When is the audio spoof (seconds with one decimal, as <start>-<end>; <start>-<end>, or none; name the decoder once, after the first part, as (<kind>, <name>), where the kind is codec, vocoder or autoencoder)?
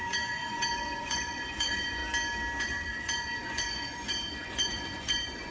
0.0-2.0 (vocoder, Vocos); 2.6-5.5